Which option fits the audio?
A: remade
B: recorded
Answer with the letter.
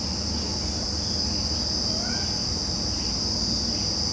A